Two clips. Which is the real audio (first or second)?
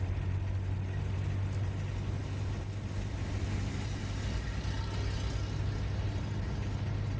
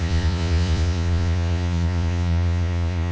first